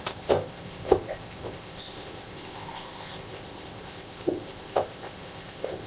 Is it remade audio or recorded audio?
remade